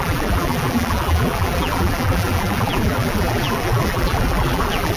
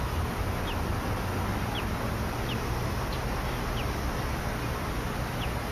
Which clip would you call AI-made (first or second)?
first